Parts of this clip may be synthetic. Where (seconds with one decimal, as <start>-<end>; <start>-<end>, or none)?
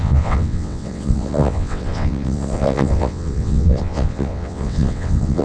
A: 0.0-5.4